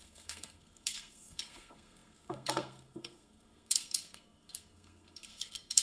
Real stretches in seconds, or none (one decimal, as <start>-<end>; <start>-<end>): none